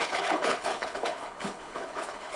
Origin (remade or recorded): remade